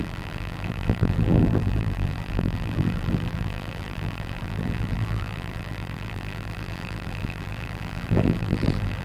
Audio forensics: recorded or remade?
remade